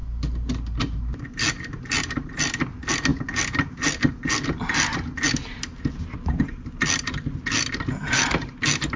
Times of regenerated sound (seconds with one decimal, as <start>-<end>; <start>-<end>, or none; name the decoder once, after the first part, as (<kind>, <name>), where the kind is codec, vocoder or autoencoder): none